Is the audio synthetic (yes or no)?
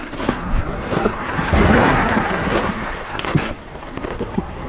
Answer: yes